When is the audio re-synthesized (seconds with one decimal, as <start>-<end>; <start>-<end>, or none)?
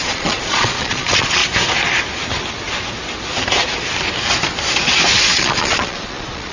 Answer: 0.0-1.4; 5.3-6.5